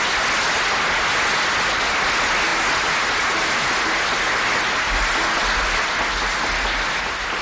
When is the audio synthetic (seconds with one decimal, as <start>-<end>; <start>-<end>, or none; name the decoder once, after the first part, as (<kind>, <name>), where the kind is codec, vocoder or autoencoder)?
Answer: none